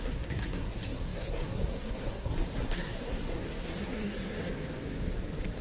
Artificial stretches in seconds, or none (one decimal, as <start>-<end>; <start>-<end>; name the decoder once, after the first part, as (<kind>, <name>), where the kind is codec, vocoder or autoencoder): 0.0-4.5 (codec, SNAC)